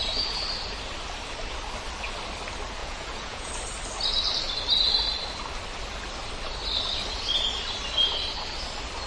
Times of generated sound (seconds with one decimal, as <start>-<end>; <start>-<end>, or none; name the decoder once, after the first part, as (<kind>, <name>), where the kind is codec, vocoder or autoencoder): 2.8-3.5 (vocoder, Vocos)